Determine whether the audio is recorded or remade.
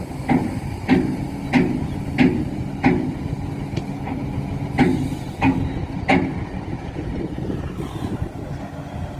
recorded